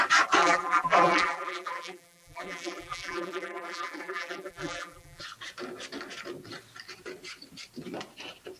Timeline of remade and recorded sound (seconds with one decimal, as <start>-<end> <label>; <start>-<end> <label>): 0.0-0.4 recorded; 0.4-5.2 remade; 5.2-8.6 recorded